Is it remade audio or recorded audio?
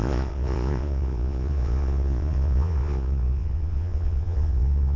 remade